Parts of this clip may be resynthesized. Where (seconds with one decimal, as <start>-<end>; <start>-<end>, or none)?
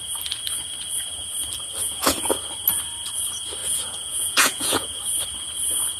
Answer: 1.8-2.3; 3.6-5.0